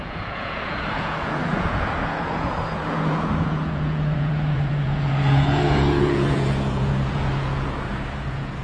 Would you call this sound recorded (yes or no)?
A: no